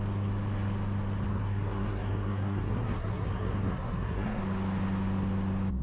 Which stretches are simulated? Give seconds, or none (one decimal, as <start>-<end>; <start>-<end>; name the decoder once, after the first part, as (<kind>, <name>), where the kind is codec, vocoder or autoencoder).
1.3-4.4 (codec, SNAC)